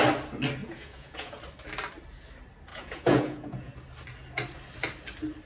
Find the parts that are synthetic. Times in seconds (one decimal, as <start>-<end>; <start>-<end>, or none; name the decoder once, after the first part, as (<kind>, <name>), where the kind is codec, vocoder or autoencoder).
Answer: 0.6-1.4 (vocoder, Vocos); 2.7-3.7

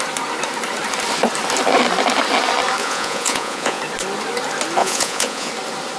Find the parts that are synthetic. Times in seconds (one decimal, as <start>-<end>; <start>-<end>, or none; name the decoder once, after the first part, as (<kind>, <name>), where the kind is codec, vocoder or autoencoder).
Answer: 2.8-3.8 (vocoder, Vocos); 4.8-5.5